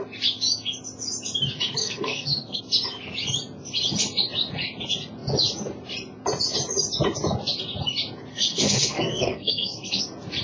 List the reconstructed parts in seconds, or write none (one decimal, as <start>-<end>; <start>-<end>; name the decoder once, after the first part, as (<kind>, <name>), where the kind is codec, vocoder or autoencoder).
1.8-2.6 (codec, SNAC); 8.3-10.0